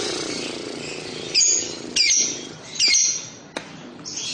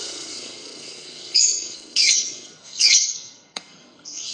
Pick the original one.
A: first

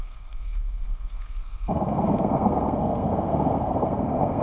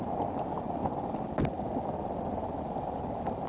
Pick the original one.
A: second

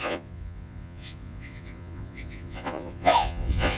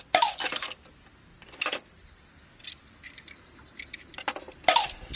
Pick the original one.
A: second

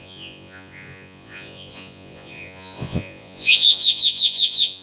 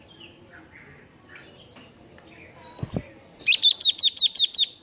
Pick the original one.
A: second